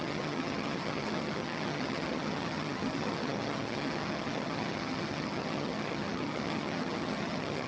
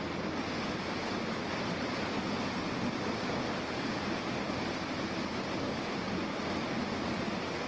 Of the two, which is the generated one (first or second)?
first